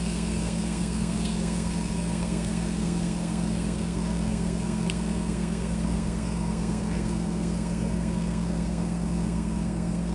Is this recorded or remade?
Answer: remade